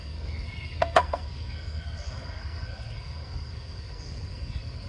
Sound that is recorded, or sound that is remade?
remade